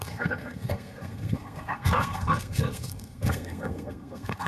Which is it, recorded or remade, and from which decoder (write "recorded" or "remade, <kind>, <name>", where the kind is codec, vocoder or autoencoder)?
remade, codec, SNAC